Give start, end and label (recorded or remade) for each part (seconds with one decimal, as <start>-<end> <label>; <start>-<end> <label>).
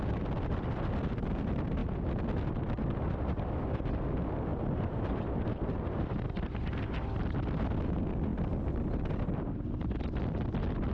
0.0-4.5 recorded; 4.5-5.3 remade; 5.3-10.9 recorded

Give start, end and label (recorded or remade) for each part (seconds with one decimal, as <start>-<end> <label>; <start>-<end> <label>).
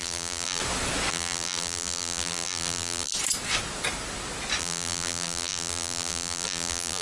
0.0-0.6 remade; 0.6-1.1 recorded; 1.1-3.1 remade; 3.1-4.6 recorded; 4.6-7.0 remade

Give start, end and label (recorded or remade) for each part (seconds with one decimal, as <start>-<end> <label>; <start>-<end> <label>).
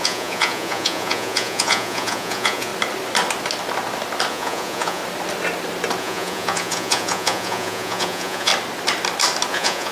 0.0-2.7 remade; 2.7-4.3 recorded; 4.3-5.0 remade; 5.0-6.0 recorded; 6.0-8.5 remade; 8.5-9.5 recorded; 9.5-9.9 remade